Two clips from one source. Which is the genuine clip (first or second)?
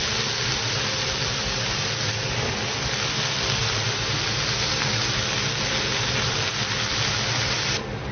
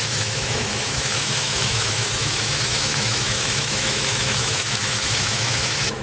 first